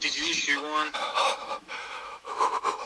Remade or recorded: remade